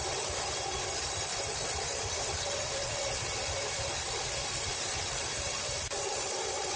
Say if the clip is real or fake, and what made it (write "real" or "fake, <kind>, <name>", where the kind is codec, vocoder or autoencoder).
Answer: real